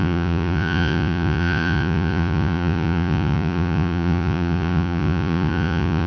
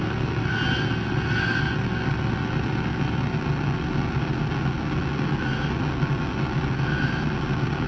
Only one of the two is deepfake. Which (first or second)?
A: first